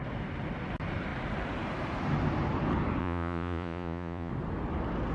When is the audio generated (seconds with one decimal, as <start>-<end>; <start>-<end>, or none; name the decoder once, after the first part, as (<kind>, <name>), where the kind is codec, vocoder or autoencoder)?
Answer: 3.0-4.3 (vocoder, Vocos)